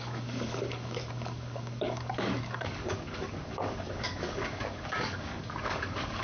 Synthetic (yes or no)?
yes